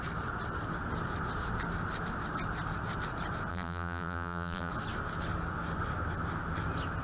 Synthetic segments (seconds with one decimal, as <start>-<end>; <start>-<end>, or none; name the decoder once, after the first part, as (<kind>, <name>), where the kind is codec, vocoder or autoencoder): 3.5-4.7 (vocoder, BigVGAN v2)